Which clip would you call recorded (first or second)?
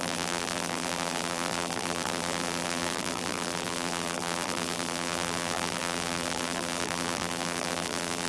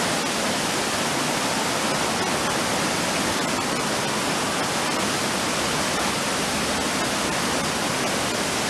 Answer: second